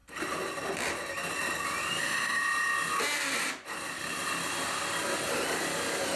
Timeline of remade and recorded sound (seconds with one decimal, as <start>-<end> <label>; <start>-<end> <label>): 0.0-2.0 recorded; 2.0-2.4 remade; 2.4-6.2 recorded